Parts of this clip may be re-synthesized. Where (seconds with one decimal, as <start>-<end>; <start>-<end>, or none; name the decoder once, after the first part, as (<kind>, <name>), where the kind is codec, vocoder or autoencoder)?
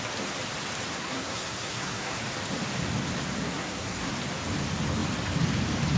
0.9-2.2 (codec, SNAC); 3.4-4.1